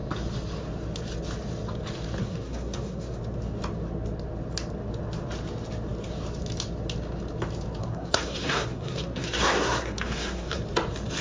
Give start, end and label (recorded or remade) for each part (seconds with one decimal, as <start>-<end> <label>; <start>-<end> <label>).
0.0-2.2 recorded; 2.2-3.2 remade; 3.2-7.8 recorded; 7.8-10.6 remade; 10.6-11.2 recorded